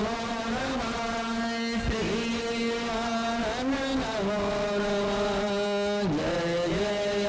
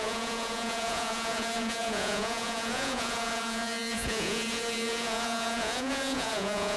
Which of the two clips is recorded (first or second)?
first